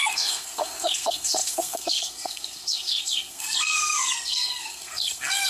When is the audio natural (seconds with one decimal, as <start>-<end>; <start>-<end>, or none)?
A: none